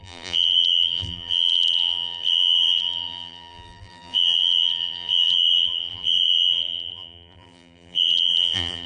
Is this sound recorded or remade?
remade